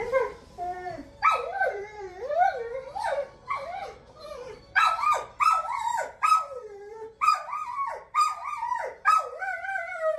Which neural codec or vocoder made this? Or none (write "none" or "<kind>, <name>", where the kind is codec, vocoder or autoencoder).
vocoder, BigVGAN v2